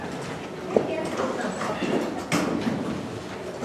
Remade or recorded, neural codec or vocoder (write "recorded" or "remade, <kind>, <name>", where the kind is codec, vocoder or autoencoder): recorded